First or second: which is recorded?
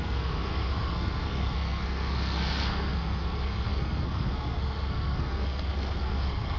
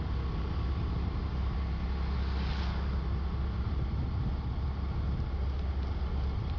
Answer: second